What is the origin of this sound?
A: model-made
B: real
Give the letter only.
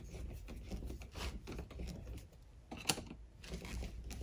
B